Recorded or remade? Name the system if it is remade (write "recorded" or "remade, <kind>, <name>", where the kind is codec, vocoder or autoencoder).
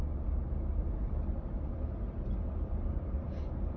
recorded